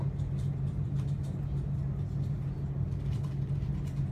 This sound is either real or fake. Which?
real